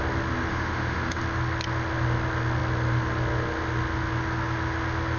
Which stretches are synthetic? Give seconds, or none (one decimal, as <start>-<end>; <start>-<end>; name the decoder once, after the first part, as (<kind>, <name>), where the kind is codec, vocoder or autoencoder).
0.5-1.2 (autoencoder, DAC-VAE)